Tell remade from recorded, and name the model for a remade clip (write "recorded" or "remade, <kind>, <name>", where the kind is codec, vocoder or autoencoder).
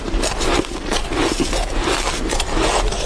remade, vocoder, BigVGAN v2